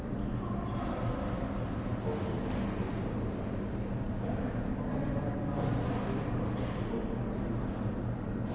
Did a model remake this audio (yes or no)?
no